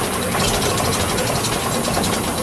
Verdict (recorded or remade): recorded